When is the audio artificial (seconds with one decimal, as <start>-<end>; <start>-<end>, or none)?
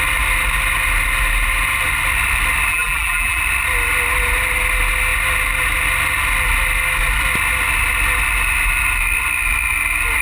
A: 2.7-3.4